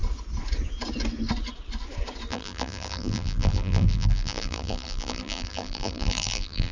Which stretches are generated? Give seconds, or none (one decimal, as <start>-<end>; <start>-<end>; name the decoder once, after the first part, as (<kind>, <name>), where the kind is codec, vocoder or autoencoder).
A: 2.3-6.7 (vocoder, BigVGAN v2)